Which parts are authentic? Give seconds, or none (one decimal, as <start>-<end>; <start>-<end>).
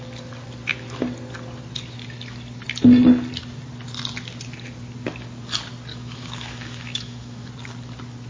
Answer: 0.0-5.9; 7.5-8.3